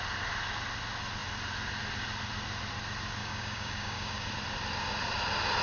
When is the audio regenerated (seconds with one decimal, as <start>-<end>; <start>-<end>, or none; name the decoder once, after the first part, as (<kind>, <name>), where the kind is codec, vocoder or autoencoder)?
3.2-4.3 (codec, DAC)